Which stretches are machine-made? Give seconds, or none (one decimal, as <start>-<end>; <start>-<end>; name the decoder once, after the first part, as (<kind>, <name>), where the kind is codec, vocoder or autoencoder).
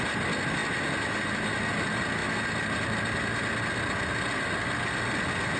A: none